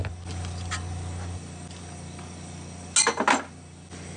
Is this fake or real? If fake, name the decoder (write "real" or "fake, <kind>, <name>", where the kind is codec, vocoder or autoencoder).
real